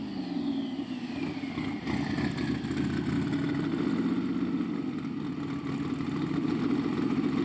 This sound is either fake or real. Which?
real